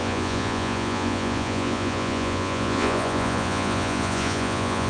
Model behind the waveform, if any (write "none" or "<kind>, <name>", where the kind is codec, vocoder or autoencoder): vocoder, Vocos